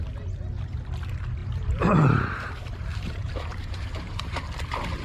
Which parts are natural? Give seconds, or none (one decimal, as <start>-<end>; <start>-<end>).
0.0-1.4; 4.4-5.0